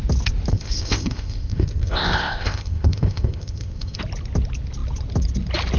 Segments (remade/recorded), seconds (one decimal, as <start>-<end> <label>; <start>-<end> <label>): 0.0-0.5 recorded; 0.5-4.0 remade; 4.0-5.8 recorded

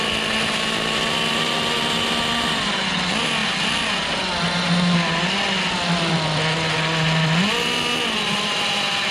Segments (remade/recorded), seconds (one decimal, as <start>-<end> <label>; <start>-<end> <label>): 0.0-9.1 recorded

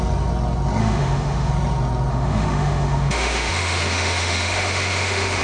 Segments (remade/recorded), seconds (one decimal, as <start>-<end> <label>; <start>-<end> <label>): 0.0-0.8 recorded; 0.8-1.5 remade; 1.5-2.1 recorded; 2.1-5.4 remade

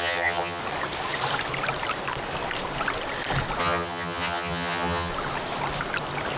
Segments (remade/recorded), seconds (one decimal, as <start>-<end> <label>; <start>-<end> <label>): 0.0-0.6 remade; 0.6-3.6 recorded; 3.6-5.1 remade; 5.1-6.4 recorded

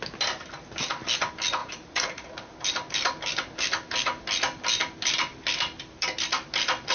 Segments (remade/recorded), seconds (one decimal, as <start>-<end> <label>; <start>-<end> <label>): 0.0-1.6 recorded; 1.6-2.3 remade; 2.3-6.9 recorded

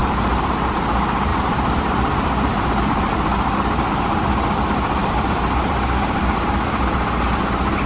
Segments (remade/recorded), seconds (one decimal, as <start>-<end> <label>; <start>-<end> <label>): 0.0-1.3 recorded; 1.3-3.1 remade; 3.1-5.0 recorded; 5.0-6.5 remade; 6.5-7.9 recorded

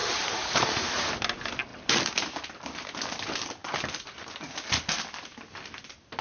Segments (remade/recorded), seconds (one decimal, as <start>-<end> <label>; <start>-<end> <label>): 0.0-1.1 remade; 1.1-1.7 recorded; 1.7-2.3 remade; 2.3-6.2 recorded

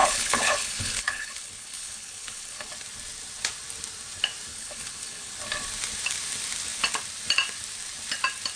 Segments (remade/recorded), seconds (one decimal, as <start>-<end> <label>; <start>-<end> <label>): 0.0-2.7 remade; 2.7-4.5 recorded; 4.5-5.3 remade; 5.3-8.6 recorded